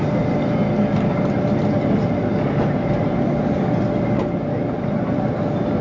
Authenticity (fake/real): real